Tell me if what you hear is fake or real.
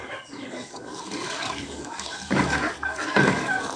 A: fake